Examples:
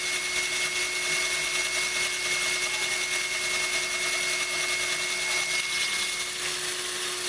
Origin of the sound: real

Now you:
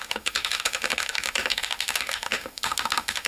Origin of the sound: fake